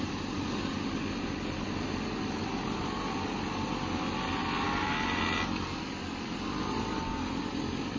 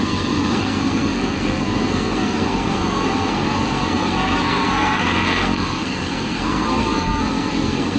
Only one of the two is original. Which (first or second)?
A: first